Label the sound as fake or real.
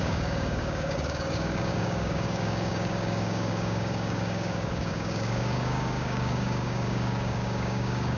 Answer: fake